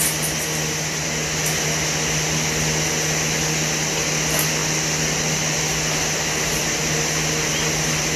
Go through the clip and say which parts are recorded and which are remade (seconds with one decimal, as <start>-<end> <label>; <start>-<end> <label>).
0.0-8.2 recorded